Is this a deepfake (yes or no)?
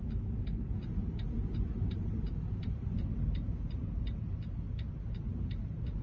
no